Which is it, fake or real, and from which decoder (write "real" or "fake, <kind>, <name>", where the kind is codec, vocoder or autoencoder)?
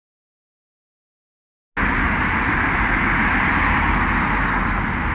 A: real